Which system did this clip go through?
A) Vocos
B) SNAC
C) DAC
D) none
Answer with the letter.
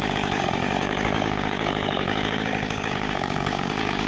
C